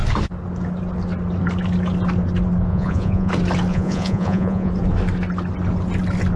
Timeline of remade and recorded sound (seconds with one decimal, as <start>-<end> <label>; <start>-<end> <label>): 0.0-2.7 recorded; 2.7-3.3 remade; 3.3-3.7 recorded; 3.7-4.7 remade; 4.7-6.4 recorded